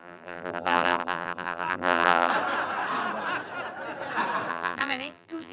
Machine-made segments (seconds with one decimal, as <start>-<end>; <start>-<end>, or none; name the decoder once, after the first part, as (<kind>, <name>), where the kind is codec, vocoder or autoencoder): 0.0-2.3 (vocoder, BigVGAN v2); 4.5-5.5